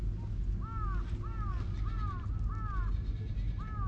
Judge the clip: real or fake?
real